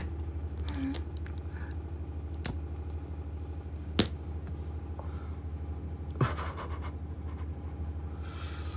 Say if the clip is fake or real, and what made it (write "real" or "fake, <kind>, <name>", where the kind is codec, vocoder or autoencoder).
real